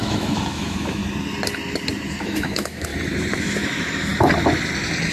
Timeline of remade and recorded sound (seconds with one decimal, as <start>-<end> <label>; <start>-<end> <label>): 0.0-1.0 remade; 1.0-2.2 recorded; 2.2-2.9 remade; 2.9-3.4 recorded; 3.4-4.1 remade; 4.1-5.1 recorded

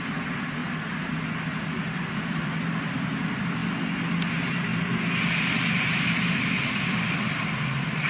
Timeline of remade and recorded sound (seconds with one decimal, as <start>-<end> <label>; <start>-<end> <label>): 0.0-0.6 remade; 0.6-2.9 recorded; 2.9-3.6 remade; 3.6-4.3 recorded; 4.3-4.7 remade; 4.7-5.8 recorded; 5.8-8.1 remade

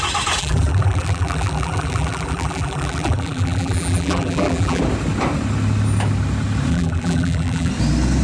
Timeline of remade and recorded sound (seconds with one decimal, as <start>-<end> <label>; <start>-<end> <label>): 0.0-0.4 recorded; 0.4-4.8 remade; 4.8-6.7 recorded; 6.7-7.7 remade; 7.7-8.2 recorded

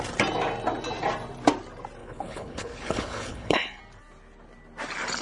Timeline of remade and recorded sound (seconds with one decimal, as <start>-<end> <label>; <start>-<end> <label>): 0.0-2.0 recorded; 2.0-3.8 remade; 3.8-5.2 recorded

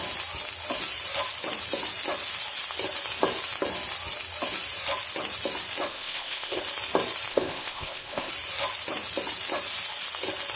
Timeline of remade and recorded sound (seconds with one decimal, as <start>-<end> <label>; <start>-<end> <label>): 0.0-5.9 recorded; 5.9-6.6 remade; 6.6-7.3 recorded; 7.3-8.3 remade; 8.3-10.6 recorded

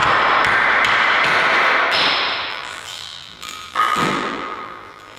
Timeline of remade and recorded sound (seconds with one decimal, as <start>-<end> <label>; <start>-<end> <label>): 0.0-2.5 recorded; 2.5-5.2 remade

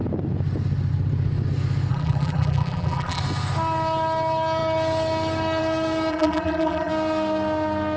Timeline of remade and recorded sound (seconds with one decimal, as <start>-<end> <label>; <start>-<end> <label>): 0.0-1.9 recorded; 1.9-3.2 remade; 3.2-6.1 recorded; 6.1-6.9 remade; 6.9-8.0 recorded

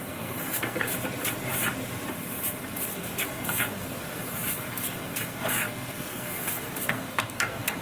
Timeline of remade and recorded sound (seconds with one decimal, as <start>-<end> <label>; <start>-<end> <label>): 0.0-0.9 remade; 0.9-2.9 recorded; 2.9-7.8 remade